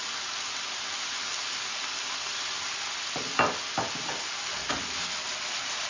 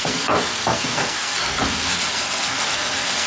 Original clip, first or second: first